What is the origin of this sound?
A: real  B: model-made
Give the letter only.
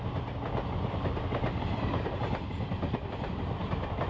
A